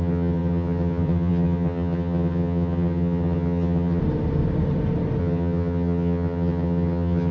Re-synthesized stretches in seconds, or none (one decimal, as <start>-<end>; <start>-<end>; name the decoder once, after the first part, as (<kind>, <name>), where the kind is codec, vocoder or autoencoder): 0.0-4.0 (vocoder, HiFi-GAN); 5.2-7.3